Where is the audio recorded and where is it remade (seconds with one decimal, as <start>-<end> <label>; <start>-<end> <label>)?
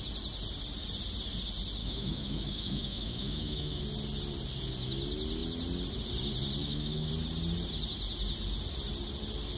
0.0-1.8 recorded; 1.8-3.8 remade; 3.8-6.6 recorded; 6.6-7.1 remade; 7.1-9.6 recorded